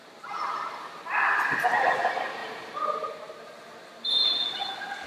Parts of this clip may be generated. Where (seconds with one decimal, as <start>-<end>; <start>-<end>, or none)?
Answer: 0.0-0.8; 2.4-4.3

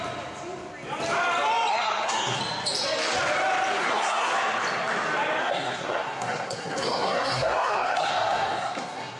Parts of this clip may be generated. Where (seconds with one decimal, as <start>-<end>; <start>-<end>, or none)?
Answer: 1.7-2.4; 3.8-4.3; 5.4-9.2